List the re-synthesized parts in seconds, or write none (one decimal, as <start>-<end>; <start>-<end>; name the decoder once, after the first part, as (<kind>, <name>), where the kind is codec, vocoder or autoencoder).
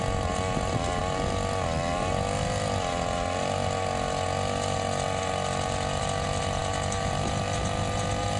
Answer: none